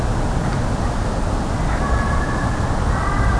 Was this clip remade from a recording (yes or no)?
no